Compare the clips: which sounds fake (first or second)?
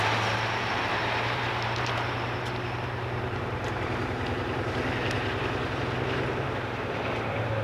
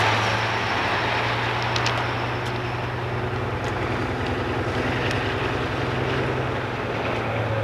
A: first